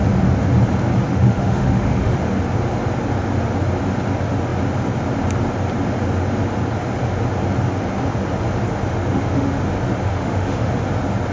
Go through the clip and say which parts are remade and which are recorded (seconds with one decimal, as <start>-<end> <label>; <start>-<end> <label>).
0.0-1.1 recorded; 1.1-2.1 remade; 2.1-9.0 recorded; 9.0-9.6 remade; 9.6-10.1 recorded; 10.1-10.7 remade; 10.7-11.3 recorded